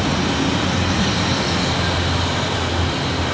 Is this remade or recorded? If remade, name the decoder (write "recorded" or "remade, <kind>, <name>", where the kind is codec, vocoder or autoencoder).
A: recorded